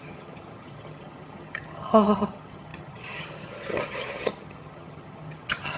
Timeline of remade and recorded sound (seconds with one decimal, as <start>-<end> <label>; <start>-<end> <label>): 0.0-5.8 remade